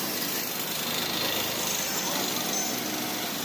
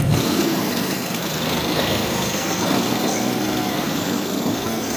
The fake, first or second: second